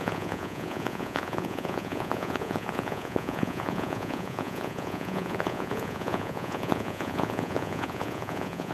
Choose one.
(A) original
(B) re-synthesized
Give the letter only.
B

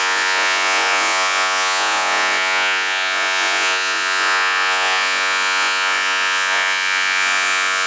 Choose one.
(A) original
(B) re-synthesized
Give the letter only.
B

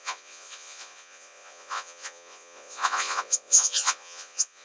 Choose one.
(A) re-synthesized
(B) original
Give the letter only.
A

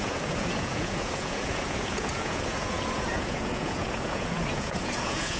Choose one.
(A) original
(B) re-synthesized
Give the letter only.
B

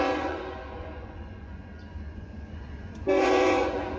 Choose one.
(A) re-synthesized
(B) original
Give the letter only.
A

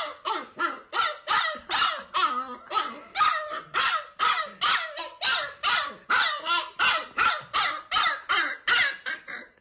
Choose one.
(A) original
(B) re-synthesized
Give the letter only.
A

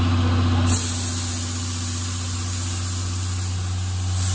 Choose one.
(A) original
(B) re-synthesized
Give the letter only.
A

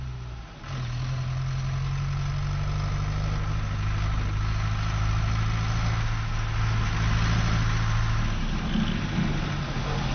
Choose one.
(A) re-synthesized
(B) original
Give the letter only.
B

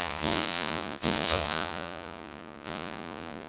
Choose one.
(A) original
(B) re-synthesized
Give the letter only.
B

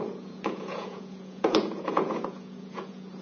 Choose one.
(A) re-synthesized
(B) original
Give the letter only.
A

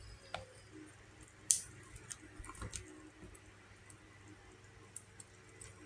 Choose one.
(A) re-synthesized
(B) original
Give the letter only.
B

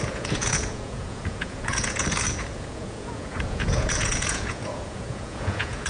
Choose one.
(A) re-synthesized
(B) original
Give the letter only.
A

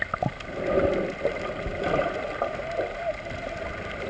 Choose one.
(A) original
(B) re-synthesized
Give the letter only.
A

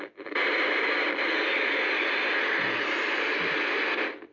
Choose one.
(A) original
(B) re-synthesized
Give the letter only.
A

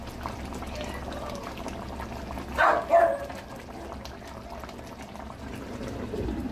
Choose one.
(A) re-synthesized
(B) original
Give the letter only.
B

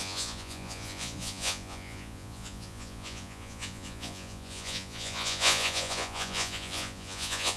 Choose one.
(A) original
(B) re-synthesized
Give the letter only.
B